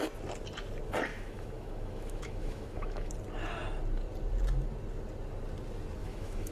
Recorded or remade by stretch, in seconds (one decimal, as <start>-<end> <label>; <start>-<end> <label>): 0.0-1.1 recorded; 1.1-3.1 remade; 3.1-6.0 recorded; 6.0-6.5 remade